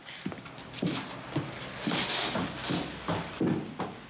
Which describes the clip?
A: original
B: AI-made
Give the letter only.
A